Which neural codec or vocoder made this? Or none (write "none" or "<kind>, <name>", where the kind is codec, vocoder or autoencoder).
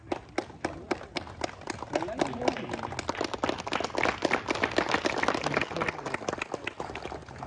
none